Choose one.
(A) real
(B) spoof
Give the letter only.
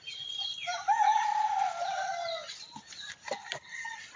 A